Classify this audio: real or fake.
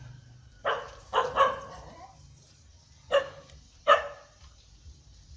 fake